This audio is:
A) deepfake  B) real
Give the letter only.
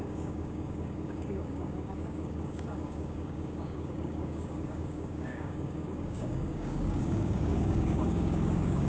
A